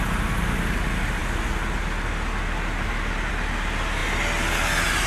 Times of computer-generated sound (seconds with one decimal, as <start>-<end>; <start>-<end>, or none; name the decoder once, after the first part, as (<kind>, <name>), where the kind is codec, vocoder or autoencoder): none